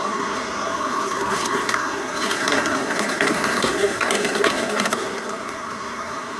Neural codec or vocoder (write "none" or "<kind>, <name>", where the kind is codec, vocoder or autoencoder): codec, SNAC